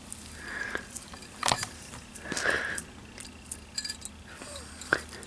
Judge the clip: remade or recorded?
recorded